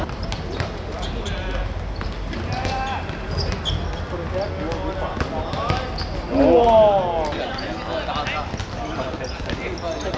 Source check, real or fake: real